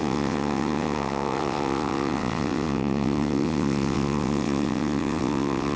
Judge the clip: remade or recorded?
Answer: remade